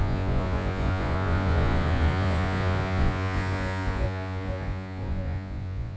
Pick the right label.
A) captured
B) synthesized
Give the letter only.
B